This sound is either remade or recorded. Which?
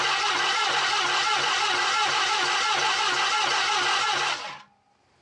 recorded